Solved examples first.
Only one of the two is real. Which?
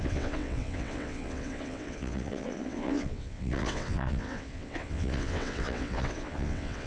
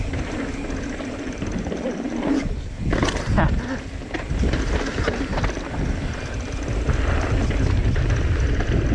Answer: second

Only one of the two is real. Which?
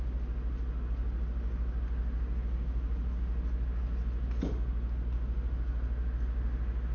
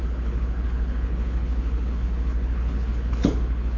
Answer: first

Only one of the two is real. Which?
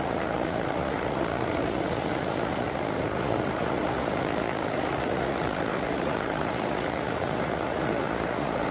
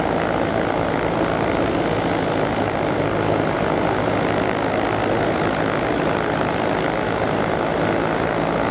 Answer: second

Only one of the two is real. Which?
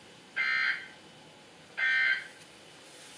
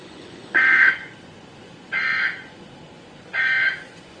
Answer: first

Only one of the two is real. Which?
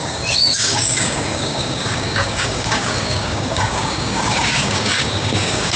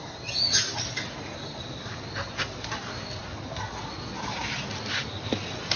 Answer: second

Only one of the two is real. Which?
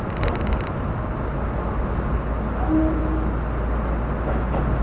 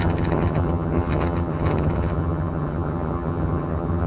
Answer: first